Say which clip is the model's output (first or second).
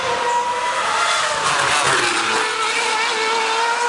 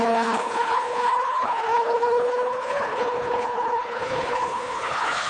second